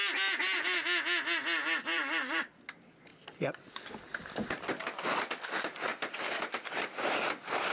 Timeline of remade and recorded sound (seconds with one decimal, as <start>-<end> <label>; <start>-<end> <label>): 0.0-1.9 recorded; 1.9-2.5 remade; 2.5-7.7 recorded